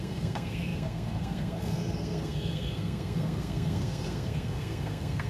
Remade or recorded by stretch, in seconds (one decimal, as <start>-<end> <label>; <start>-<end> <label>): 0.0-5.3 remade